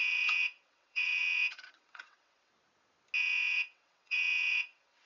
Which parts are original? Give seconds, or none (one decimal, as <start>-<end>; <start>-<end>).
2.5-3.2